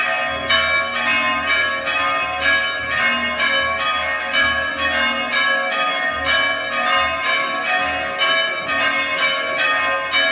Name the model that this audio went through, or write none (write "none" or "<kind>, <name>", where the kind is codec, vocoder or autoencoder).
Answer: none